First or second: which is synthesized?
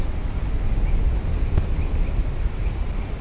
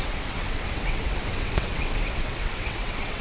second